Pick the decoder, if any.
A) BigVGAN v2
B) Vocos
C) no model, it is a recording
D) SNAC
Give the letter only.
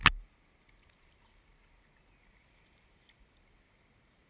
C